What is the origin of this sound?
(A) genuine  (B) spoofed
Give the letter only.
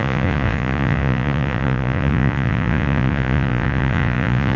B